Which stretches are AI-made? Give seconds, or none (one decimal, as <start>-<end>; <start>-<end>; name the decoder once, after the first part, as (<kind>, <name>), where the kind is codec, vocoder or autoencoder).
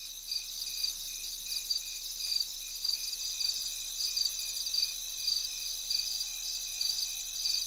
0.8-1.7 (vocoder, BigVGAN v2); 2.5-6.1; 6.7-7.7